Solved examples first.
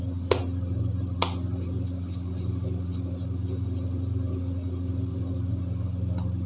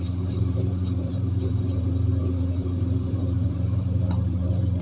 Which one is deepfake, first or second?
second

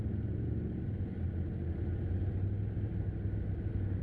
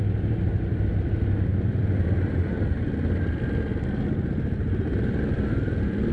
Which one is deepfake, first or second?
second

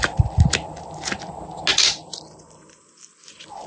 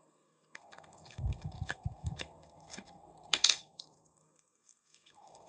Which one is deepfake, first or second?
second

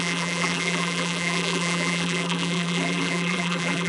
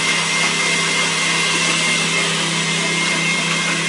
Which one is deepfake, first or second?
first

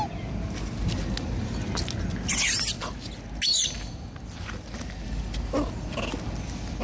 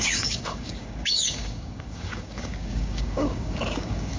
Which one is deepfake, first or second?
second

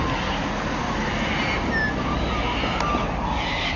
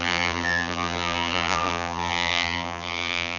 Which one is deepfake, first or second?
second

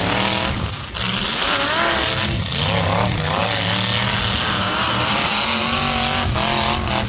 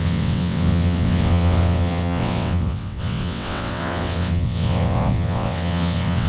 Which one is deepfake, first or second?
second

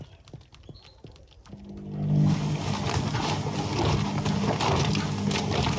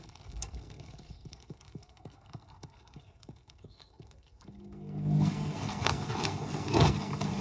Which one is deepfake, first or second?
second